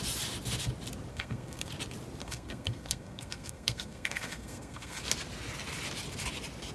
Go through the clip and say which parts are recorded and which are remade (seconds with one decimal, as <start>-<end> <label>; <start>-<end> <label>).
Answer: 0.0-1.1 recorded; 1.1-1.7 remade; 1.7-2.2 recorded; 2.2-5.0 remade; 5.0-6.7 recorded